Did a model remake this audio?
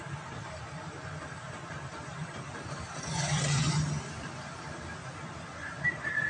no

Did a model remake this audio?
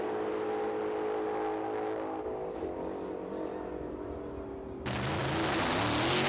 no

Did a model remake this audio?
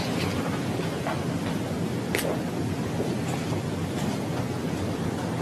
no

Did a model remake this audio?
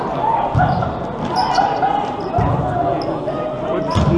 no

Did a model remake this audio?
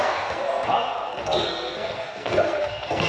yes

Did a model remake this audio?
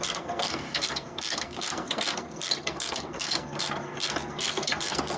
yes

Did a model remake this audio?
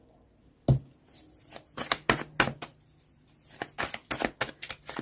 no